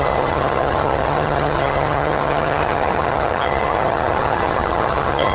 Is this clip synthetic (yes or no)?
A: yes